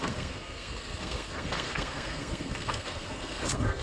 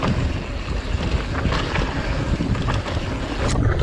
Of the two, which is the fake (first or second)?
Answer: first